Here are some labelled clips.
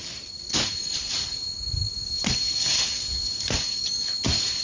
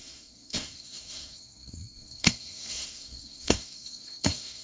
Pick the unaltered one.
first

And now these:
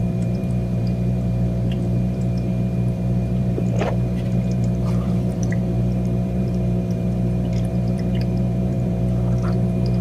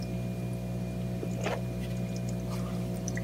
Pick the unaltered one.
second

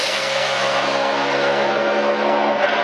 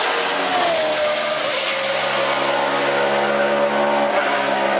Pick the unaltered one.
second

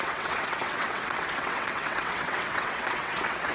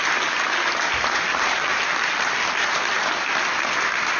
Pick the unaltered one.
second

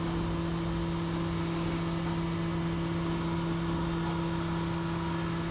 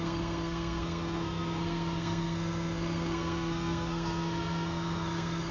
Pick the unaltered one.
first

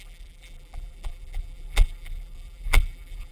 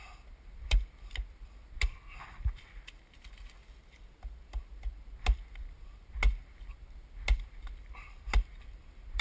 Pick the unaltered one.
second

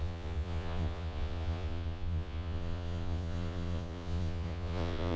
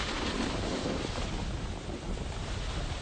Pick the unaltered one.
second